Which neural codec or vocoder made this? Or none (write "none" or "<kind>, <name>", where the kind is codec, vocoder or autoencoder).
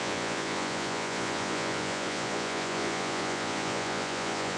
vocoder, Vocos